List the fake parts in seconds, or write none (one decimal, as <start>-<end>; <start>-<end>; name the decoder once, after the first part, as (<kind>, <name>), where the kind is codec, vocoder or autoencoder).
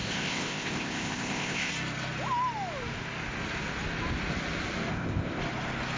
0.0-1.7 (codec, ZipCodec); 4.9-5.4